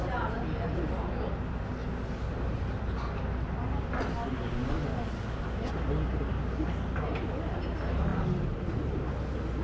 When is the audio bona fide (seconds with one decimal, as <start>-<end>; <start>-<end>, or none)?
0.0-4.9; 5.7-9.6